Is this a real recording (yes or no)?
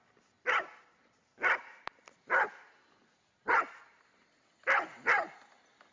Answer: yes